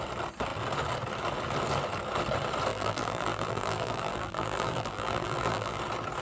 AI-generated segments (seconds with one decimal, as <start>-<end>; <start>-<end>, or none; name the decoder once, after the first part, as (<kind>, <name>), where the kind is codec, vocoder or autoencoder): 2.7-5.8 (vocoder, BigVGAN v2)